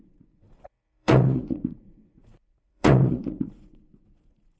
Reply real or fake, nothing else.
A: fake